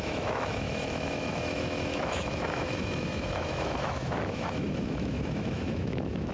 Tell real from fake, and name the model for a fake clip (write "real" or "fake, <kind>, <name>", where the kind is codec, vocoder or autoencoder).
fake, autoencoder, DAC-VAE